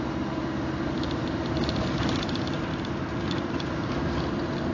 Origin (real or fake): real